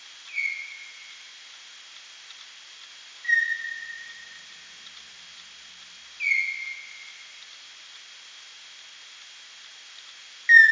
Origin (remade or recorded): recorded